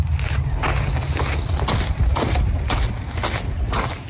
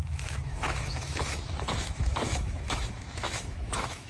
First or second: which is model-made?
second